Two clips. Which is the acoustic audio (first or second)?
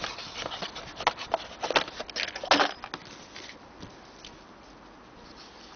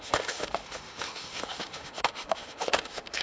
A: first